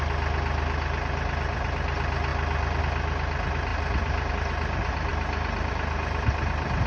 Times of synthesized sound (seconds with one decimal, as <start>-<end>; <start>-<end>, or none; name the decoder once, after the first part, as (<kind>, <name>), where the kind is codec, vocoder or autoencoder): none